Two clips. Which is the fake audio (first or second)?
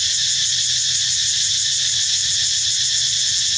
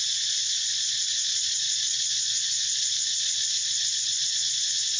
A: second